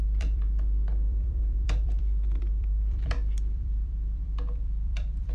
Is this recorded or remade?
remade